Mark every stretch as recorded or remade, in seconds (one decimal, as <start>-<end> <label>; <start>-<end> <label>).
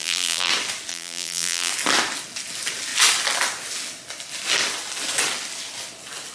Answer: 0.0-0.5 remade; 0.5-0.9 recorded; 0.9-1.7 remade; 1.7-6.3 recorded